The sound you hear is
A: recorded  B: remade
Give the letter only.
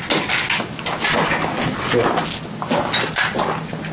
A